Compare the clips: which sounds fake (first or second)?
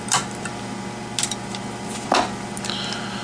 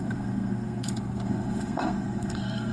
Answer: second